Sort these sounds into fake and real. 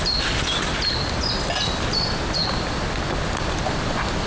real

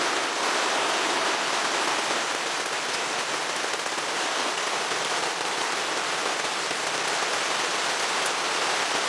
real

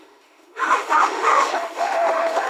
fake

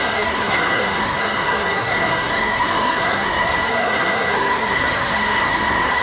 fake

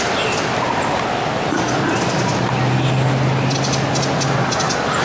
real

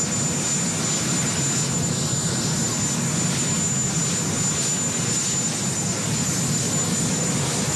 real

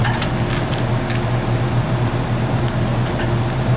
real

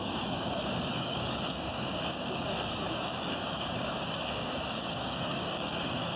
fake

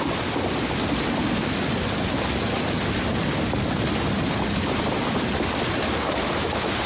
real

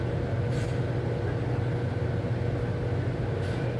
real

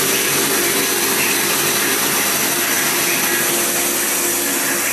real